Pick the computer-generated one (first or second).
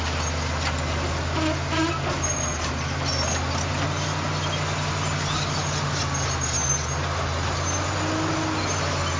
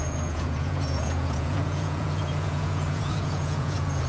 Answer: second